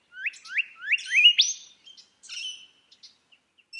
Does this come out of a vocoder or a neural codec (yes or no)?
no